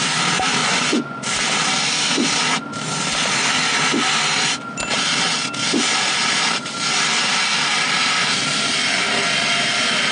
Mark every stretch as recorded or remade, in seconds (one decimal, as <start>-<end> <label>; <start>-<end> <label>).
0.0-0.6 recorded; 0.6-1.3 remade; 1.3-10.1 recorded